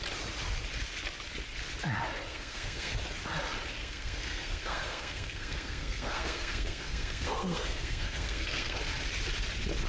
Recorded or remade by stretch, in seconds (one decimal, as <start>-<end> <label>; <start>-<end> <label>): 0.0-2.3 recorded; 2.3-3.0 remade; 3.0-3.8 recorded; 3.8-8.8 remade; 8.8-9.9 recorded